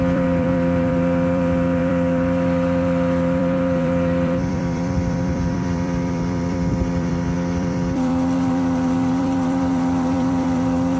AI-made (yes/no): yes